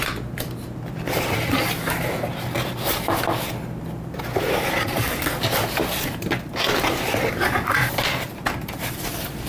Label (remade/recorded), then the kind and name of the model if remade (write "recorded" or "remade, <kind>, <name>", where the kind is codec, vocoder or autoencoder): recorded